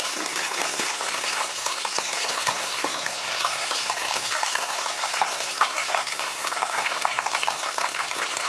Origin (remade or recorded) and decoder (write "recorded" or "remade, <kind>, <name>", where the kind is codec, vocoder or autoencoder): remade, codec, SNAC